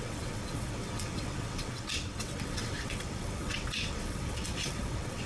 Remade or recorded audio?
remade